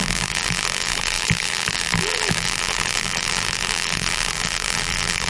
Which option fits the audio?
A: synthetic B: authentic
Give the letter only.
A